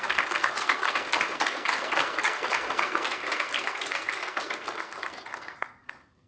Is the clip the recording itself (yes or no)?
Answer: no